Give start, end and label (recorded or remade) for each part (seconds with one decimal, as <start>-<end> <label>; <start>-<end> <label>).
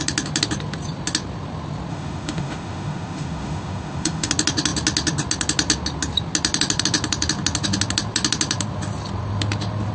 0.0-1.9 recorded; 1.9-4.3 remade; 4.3-9.9 recorded